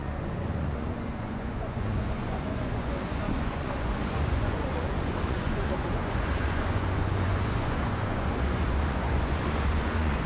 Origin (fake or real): fake